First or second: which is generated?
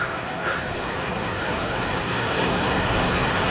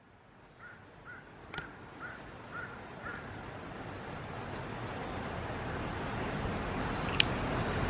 first